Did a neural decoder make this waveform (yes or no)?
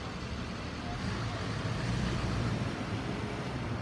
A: no